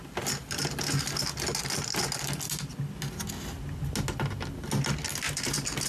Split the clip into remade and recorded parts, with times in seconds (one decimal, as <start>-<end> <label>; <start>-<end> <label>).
0.0-5.9 recorded

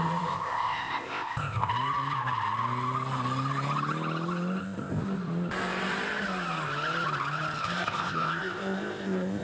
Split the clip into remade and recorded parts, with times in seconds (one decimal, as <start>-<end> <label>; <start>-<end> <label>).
0.0-1.7 remade; 1.7-4.6 recorded; 4.6-5.0 remade; 5.0-7.6 recorded; 7.6-9.4 remade

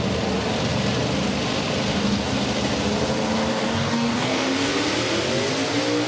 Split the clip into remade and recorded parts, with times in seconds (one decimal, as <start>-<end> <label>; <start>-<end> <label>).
0.0-1.9 recorded; 1.9-2.4 remade; 2.4-3.5 recorded; 3.5-4.7 remade; 4.7-6.1 recorded

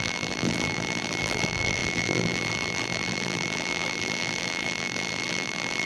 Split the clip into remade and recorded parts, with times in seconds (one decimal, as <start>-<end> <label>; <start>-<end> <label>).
0.0-5.8 remade

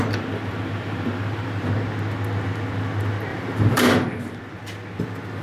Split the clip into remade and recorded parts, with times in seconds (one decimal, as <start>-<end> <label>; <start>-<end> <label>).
0.0-0.4 recorded; 0.4-1.7 remade; 1.7-3.3 recorded; 3.3-4.4 remade; 4.4-5.4 recorded

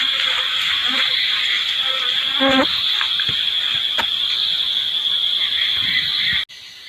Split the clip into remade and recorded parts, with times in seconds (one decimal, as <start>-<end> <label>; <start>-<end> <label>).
0.0-0.8 recorded; 0.8-1.4 remade; 1.4-6.9 recorded

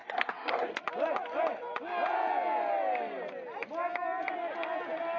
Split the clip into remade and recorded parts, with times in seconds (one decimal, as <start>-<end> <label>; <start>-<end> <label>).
0.0-0.7 remade; 0.7-5.2 recorded